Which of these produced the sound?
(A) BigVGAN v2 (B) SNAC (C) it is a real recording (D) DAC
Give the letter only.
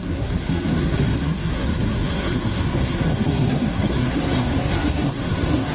B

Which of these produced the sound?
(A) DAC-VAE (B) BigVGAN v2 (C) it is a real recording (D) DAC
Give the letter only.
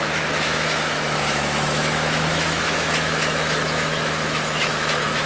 A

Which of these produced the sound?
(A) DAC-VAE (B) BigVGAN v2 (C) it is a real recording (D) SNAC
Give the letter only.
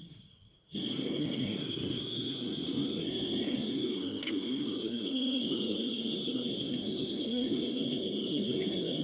D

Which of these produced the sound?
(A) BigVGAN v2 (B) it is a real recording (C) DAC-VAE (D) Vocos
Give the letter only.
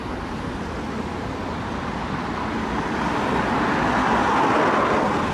B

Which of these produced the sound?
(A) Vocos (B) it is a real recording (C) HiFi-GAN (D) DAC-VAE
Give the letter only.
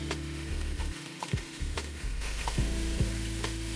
D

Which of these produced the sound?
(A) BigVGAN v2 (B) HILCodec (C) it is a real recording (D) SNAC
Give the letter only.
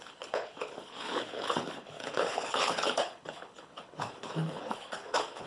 B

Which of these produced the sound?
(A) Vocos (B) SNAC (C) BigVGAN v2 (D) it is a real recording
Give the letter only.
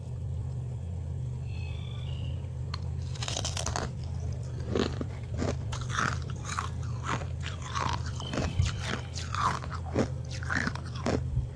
D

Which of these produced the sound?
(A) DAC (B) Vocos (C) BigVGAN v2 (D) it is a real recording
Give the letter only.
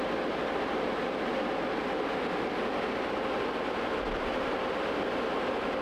D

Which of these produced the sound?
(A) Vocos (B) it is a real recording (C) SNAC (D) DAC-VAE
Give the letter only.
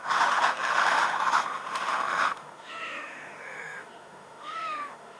D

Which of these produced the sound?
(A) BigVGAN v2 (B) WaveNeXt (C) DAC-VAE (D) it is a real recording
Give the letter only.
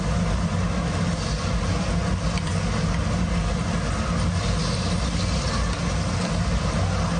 D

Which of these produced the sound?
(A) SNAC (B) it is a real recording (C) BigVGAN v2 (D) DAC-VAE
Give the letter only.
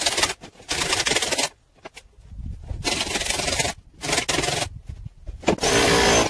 B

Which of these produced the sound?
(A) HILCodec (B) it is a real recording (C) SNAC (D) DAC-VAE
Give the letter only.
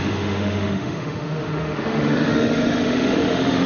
D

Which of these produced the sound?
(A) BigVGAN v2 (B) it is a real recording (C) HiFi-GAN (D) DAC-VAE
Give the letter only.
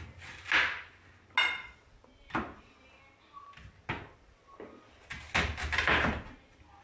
B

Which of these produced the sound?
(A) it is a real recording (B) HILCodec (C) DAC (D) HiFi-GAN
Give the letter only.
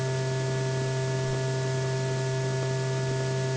A